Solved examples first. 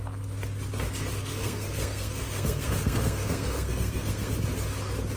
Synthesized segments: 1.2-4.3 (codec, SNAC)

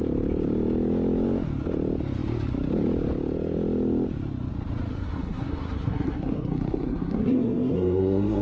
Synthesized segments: 4.9-8.4 (codec, SNAC)

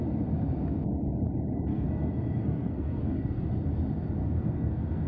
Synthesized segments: 1.7-3.5 (codec, SNAC); 4.2-5.1

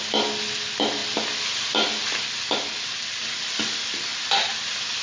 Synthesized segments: none

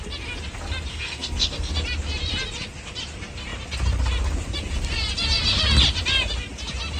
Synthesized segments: 0.9-1.7 (codec, SNAC)

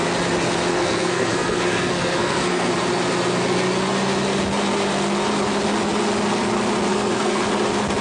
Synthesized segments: 0.7-2.7 (codec, SNAC); 6.9-7.4